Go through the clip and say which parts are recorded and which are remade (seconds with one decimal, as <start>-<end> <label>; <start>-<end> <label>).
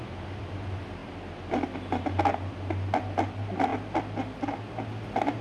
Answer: 0.0-5.4 recorded